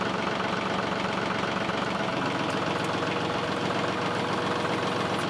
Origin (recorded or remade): recorded